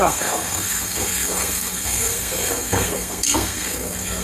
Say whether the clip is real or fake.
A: fake